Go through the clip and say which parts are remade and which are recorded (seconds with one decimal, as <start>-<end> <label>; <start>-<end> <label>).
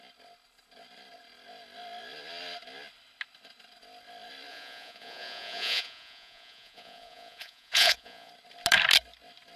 0.0-4.5 recorded; 4.5-8.3 remade; 8.3-9.6 recorded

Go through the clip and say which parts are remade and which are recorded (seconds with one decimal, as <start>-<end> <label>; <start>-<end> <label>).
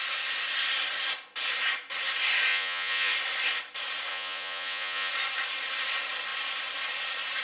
0.0-2.5 recorded; 2.5-3.1 remade; 3.1-4.1 recorded; 4.1-5.1 remade; 5.1-7.4 recorded